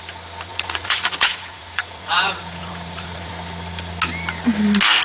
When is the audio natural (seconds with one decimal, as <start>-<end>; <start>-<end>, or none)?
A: 0.0-0.5; 3.3-5.0